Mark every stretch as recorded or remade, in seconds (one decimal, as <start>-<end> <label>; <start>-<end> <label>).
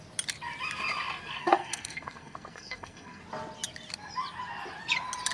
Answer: 0.0-1.4 recorded; 1.4-3.2 remade; 3.2-5.3 recorded